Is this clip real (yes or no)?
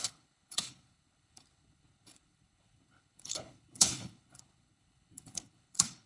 no